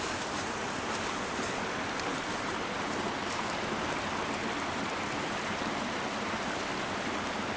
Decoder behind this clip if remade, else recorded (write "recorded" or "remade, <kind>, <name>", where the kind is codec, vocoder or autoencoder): recorded